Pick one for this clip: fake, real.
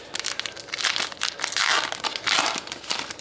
real